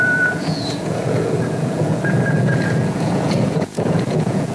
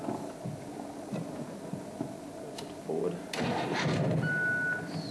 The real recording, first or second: second